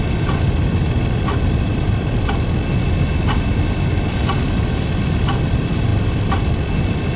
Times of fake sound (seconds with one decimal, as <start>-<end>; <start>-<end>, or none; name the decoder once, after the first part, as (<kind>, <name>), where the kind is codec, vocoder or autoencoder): none